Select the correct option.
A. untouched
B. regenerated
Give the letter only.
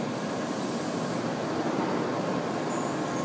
A